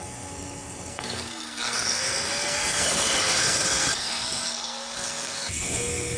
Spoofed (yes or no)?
yes